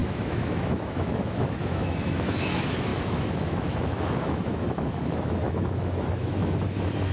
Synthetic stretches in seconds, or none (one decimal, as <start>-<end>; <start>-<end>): 0.0-7.1